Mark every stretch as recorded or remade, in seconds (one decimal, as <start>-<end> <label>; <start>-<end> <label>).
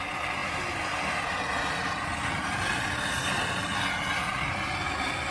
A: 0.0-5.3 recorded